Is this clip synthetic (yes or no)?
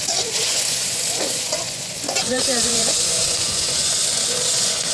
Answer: yes